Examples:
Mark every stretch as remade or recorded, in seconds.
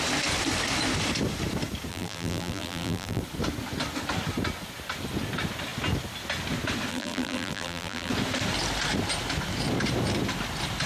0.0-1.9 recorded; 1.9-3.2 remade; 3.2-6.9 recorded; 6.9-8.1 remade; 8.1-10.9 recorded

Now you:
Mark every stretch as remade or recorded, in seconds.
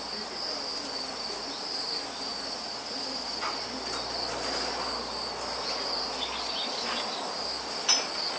0.0-8.4 recorded